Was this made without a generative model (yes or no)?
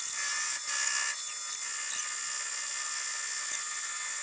yes